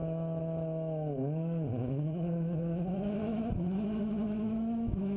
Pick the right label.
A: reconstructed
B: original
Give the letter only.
A